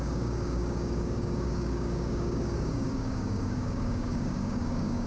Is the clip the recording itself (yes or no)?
no